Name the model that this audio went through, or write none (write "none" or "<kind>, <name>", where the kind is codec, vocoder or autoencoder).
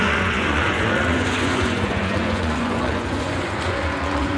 vocoder, Vocos